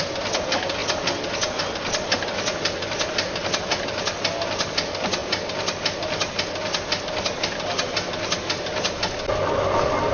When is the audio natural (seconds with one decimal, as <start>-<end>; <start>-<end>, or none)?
0.0-10.1